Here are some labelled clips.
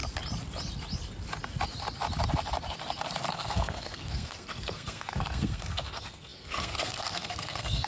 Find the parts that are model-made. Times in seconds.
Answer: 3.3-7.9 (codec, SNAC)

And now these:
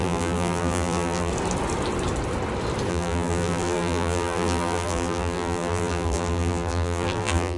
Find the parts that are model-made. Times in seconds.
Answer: 0.0-1.3 (vocoder, BigVGAN v2); 2.9-7.6

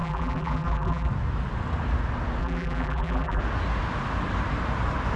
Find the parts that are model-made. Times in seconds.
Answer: 0.0-1.1 (vocoder, BigVGAN v2); 2.4-3.4